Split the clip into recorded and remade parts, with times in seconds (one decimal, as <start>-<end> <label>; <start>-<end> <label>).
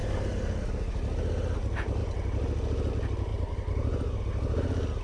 0.0-0.7 remade; 0.7-3.3 recorded; 3.3-4.2 remade; 4.2-5.0 recorded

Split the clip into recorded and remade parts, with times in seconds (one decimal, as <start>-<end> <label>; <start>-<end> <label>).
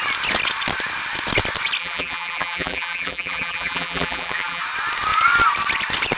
0.0-1.8 recorded; 1.8-4.6 remade; 4.6-6.2 recorded